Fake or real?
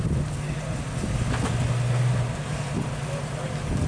real